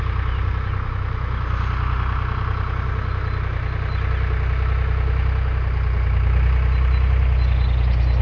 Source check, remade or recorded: recorded